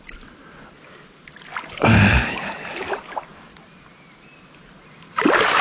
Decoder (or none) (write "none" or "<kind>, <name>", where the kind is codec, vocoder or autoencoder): none